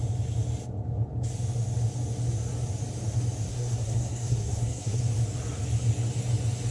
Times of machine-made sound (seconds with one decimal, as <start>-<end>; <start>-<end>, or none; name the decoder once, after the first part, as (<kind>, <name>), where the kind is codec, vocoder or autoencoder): 3.5-5.0 (codec, SNAC)